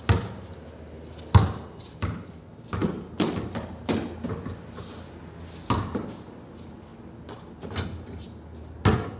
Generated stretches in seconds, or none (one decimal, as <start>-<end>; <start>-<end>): none